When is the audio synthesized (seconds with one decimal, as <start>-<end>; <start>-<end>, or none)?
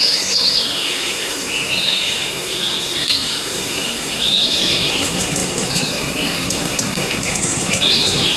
0.0-8.4